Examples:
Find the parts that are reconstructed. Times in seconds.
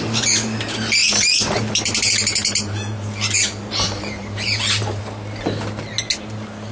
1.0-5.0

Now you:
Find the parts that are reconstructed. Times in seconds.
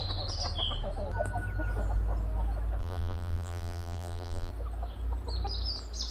2.8-4.5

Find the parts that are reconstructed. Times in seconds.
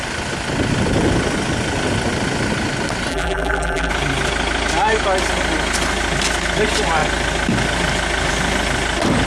3.1-3.9